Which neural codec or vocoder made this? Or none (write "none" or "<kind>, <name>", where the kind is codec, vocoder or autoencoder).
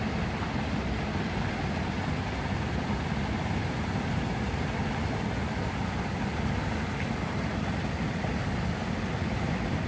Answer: none